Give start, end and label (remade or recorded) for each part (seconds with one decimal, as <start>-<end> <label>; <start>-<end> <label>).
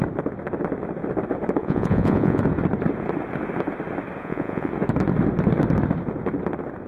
0.0-1.6 recorded; 1.6-2.4 remade; 2.4-4.2 recorded; 4.2-4.7 remade; 4.7-6.9 recorded